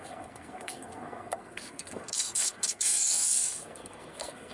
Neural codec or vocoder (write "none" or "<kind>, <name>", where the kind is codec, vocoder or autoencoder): codec, SNAC